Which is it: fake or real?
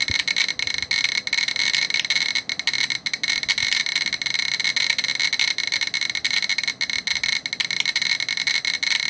real